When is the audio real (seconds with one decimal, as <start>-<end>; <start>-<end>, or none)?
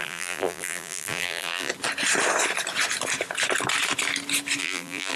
1.7-4.6